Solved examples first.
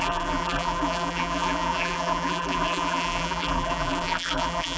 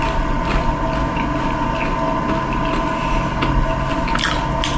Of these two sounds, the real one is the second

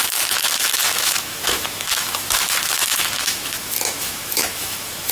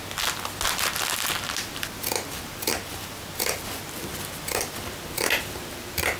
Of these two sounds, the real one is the second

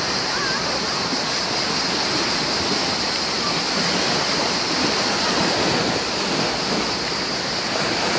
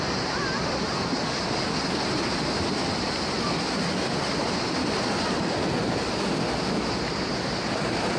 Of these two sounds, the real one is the second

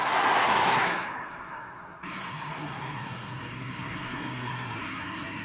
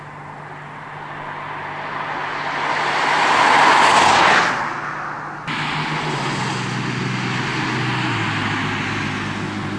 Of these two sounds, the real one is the second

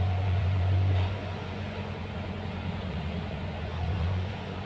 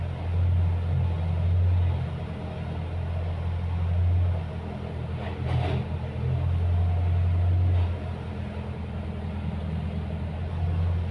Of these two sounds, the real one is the second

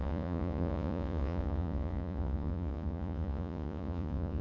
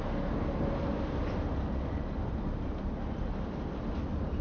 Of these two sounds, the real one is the second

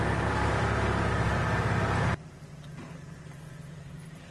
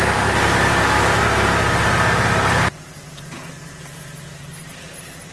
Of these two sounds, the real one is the second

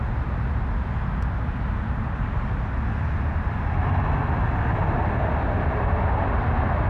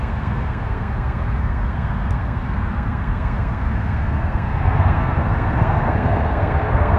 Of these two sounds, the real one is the first